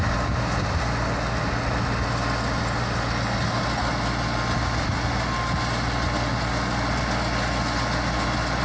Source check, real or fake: real